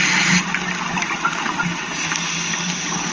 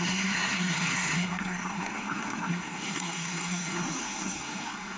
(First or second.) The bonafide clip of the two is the first